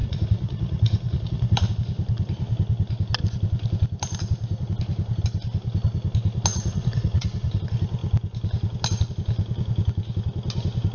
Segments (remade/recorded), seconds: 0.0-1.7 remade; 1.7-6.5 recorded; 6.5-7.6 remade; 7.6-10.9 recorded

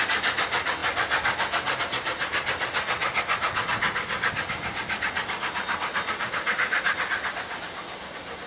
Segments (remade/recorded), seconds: 0.0-8.5 recorded

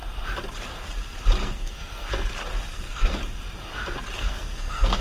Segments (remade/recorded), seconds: 0.0-1.4 recorded; 1.4-2.1 remade; 2.1-2.7 recorded; 2.7-3.2 remade; 3.2-4.2 recorded; 4.2-5.0 remade

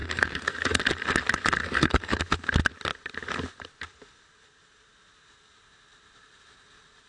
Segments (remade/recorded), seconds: 0.0-0.8 remade; 0.8-1.6 recorded; 1.6-2.2 remade; 2.2-7.1 recorded

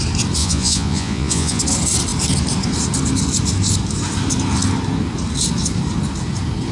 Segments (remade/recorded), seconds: 0.0-0.4 recorded; 0.4-1.6 remade; 1.6-6.7 recorded

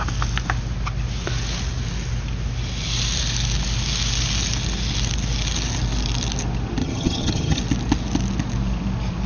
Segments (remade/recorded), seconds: 0.0-6.8 recorded; 6.8-7.6 remade; 7.6-9.3 recorded

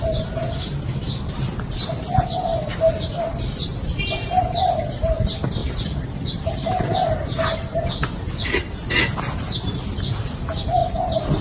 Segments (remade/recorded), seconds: 0.0-11.4 recorded

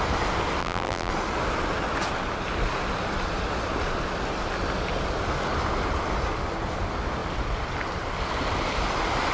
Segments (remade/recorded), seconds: 0.0-0.6 recorded; 0.6-1.1 remade; 1.1-9.3 recorded